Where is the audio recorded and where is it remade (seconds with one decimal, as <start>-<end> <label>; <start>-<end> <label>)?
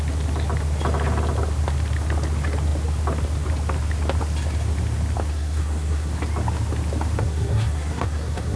0.0-5.3 recorded; 5.3-6.1 remade; 6.1-7.2 recorded; 7.2-8.6 remade